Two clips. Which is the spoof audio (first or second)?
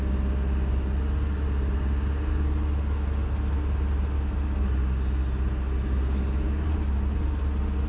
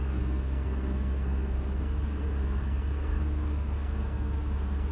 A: second